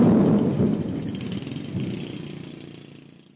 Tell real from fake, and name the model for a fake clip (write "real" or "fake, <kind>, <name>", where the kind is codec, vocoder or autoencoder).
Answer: real